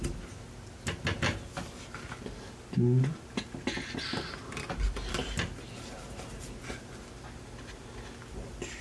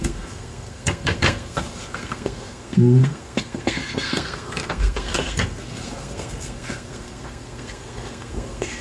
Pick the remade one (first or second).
second